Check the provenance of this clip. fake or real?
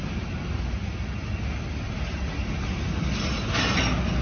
real